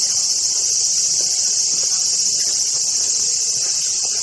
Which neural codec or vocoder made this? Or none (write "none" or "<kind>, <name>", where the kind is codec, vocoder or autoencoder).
none